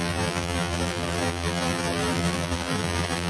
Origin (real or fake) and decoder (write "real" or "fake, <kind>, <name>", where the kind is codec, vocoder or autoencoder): fake, vocoder, BigVGAN v2